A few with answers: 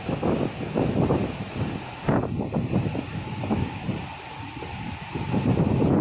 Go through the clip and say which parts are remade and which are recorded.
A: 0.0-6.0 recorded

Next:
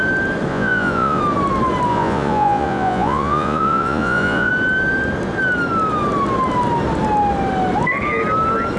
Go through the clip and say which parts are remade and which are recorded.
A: 0.0-0.5 recorded; 0.5-1.2 remade; 1.2-1.9 recorded; 1.9-4.5 remade; 4.5-8.8 recorded